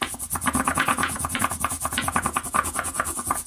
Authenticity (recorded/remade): remade